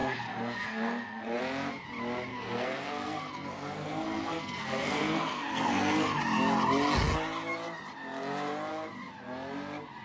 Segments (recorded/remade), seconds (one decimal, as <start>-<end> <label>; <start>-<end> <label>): 0.0-1.4 remade; 1.4-2.3 recorded; 2.3-6.2 remade; 6.2-10.0 recorded